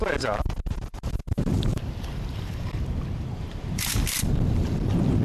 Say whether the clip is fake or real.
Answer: fake